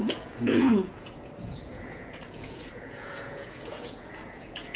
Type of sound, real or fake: fake